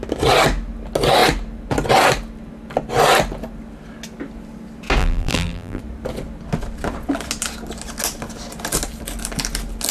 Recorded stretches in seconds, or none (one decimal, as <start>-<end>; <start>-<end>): 0.0-5.0; 5.8-9.9